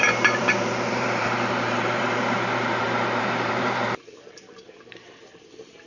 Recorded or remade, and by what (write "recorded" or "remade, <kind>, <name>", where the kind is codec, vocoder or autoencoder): remade, vocoder, BigVGAN v2